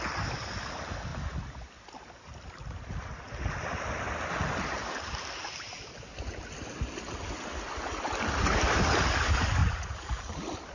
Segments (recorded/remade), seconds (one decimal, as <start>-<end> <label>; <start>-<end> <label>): 0.0-9.6 recorded; 9.6-10.2 remade; 10.2-10.7 recorded

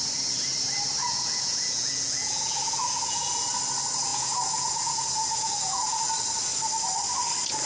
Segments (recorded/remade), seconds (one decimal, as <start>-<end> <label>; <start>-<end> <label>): 0.0-1.0 recorded; 1.0-3.5 remade; 3.5-4.1 recorded; 4.1-6.0 remade; 6.0-7.7 recorded

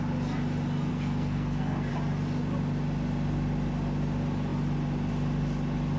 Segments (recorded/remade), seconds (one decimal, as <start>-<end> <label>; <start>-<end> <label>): 0.0-0.9 recorded; 0.9-1.9 remade; 1.9-6.0 recorded